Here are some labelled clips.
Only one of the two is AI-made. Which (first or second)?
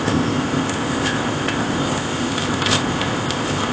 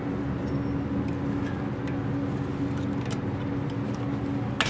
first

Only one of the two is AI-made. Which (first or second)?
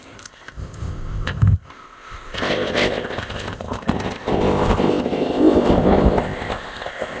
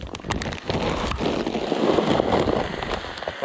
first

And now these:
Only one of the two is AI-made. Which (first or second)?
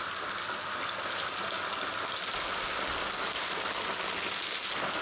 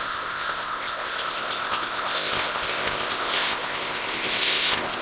second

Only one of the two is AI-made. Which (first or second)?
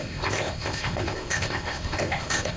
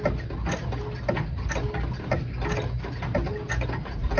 first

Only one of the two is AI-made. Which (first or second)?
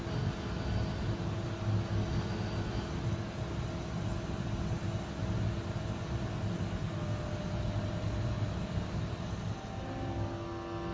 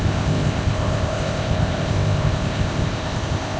second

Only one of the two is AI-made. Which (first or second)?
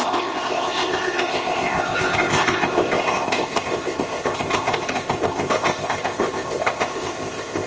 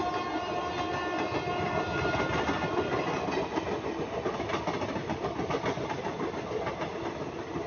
first